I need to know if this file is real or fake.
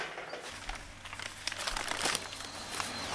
real